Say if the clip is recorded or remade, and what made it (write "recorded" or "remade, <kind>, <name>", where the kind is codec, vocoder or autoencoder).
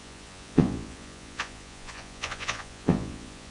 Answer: remade, vocoder, Vocos